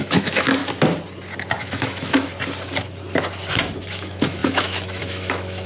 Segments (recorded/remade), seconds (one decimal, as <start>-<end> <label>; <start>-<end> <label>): 0.0-0.6 remade; 0.6-1.6 recorded; 1.6-2.3 remade; 2.3-3.9 recorded; 3.9-5.7 remade